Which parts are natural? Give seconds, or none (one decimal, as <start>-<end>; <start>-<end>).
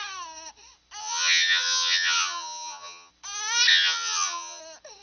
0.0-1.0; 3.1-3.7; 4.6-5.0